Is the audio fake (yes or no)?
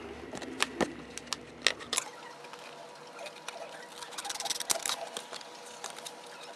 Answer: no